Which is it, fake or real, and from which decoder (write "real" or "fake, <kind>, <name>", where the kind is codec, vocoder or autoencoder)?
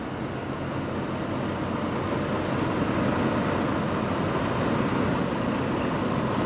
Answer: real